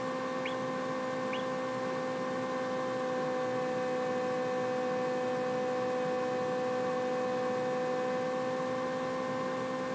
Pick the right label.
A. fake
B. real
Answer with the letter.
B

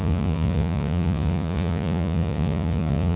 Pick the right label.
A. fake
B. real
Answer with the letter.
A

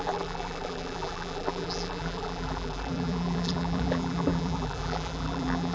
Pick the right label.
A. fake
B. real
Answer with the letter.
A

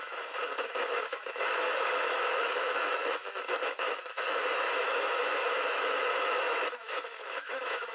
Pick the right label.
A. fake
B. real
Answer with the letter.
A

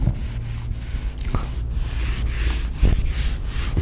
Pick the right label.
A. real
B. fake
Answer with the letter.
A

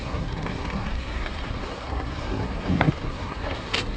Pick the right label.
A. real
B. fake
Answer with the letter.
B